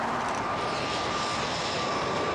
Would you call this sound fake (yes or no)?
no